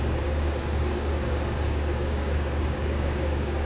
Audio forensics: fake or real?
fake